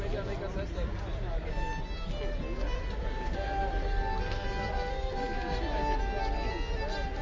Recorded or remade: recorded